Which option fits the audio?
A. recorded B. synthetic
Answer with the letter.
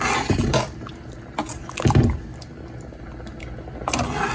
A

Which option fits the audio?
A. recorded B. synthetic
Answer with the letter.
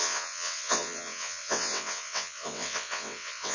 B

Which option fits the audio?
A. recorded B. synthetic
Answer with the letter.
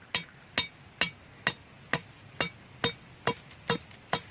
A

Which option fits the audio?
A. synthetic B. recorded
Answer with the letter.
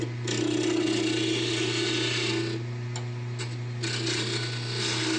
B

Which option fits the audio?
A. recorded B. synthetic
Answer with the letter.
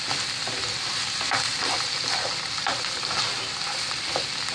A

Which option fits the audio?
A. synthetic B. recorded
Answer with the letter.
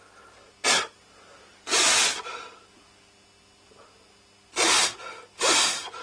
B